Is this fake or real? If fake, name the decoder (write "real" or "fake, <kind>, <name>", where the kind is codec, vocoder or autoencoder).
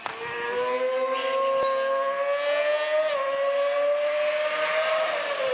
real